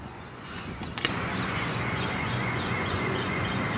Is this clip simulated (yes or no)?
yes